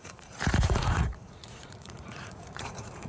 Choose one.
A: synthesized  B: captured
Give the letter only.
A